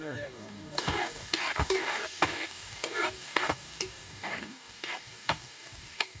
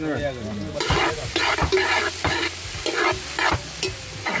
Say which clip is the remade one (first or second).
first